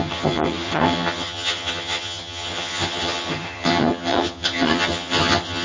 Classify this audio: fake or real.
fake